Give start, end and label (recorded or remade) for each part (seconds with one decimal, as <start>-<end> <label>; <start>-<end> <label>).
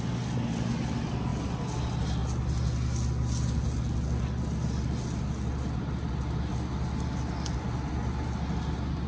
0.0-9.1 recorded